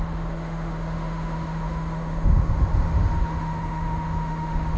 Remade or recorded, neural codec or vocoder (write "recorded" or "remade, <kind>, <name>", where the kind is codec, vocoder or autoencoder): remade, autoencoder, DAC-VAE